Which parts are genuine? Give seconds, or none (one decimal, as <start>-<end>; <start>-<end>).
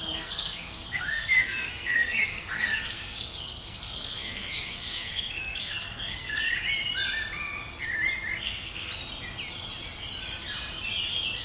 6.4-8.4; 8.9-11.4